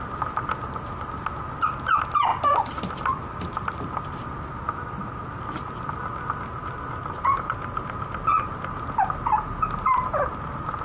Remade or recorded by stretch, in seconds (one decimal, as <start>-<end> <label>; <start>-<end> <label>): 0.0-10.8 recorded